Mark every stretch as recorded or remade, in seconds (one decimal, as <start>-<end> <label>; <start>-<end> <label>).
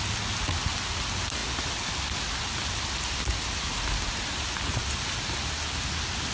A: 0.0-6.3 recorded